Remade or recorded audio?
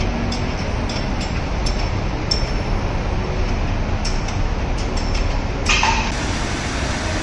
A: recorded